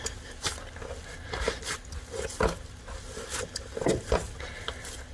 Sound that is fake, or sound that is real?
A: real